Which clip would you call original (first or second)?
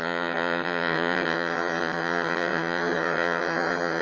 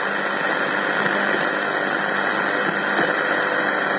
second